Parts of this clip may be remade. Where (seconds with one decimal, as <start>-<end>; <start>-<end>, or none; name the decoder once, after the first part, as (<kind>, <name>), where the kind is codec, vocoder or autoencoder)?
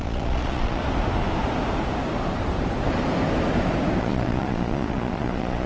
0.0-0.8 (vocoder, Vocos); 4.0-5.7